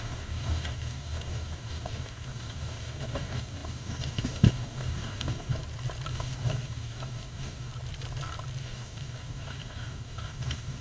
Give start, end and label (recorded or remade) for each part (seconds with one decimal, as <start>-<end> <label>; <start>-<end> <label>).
0.0-5.6 remade; 5.6-6.1 recorded; 6.1-7.7 remade; 7.7-8.6 recorded; 8.6-10.8 remade